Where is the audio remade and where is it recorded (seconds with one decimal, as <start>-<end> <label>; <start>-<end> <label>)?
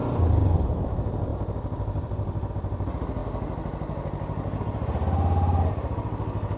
0.0-1.3 recorded; 1.3-2.5 remade; 2.5-6.6 recorded